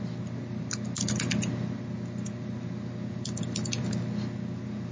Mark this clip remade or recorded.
recorded